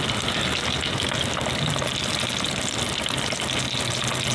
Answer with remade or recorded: recorded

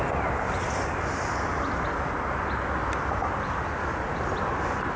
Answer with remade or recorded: recorded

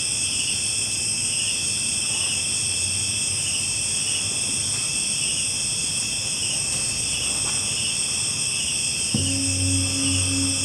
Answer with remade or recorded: recorded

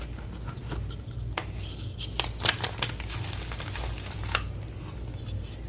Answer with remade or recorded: recorded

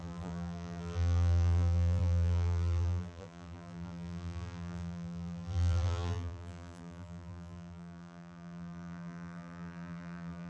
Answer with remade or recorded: remade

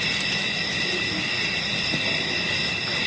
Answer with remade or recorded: recorded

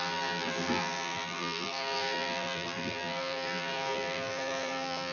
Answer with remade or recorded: remade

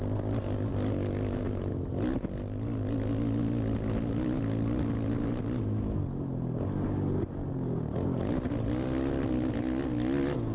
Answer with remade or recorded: recorded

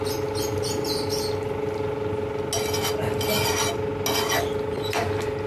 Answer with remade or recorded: recorded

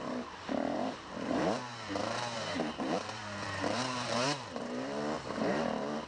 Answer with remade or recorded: remade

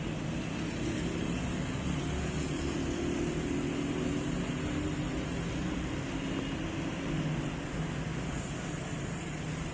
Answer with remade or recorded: recorded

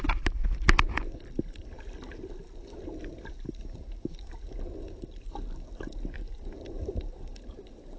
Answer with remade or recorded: remade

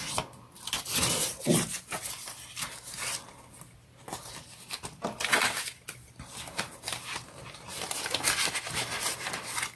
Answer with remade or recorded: recorded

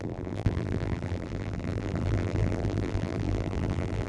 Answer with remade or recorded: remade